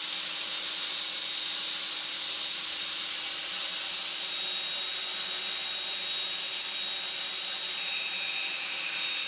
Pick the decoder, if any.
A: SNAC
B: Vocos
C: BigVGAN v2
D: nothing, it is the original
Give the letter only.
D